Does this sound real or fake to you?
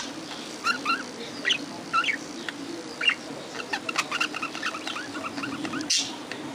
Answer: real